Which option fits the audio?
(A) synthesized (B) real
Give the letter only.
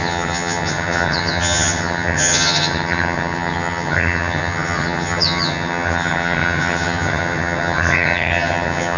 A